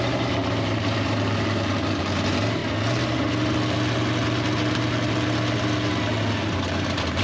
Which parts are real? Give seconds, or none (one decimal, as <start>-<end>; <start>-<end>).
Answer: 2.6-6.4